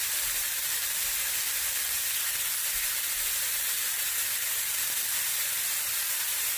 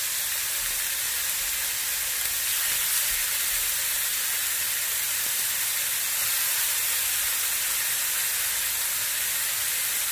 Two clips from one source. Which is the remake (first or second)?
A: first